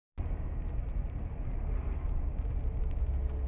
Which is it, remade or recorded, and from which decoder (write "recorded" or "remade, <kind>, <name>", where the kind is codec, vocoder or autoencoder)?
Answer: recorded